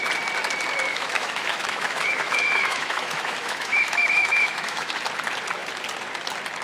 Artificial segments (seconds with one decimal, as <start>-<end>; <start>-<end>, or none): 0.9-4.9

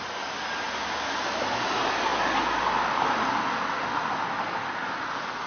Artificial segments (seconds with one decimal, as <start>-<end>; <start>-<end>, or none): none

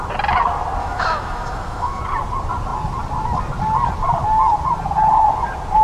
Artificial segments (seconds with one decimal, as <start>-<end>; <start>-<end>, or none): 0.8-2.0

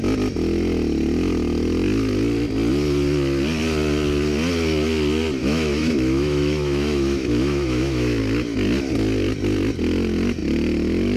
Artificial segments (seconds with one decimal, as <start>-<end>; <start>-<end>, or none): 5.4-8.2

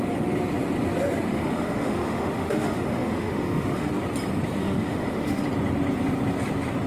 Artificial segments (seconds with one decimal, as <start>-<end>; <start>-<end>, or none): 1.3-3.9; 4.6-5.4

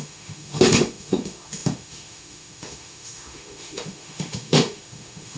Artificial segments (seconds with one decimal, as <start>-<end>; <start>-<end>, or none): 0.0-5.4

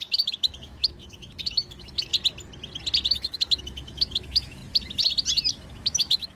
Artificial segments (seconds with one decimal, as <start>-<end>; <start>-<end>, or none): 0.0-2.1; 3.1-4.6; 5.5-6.4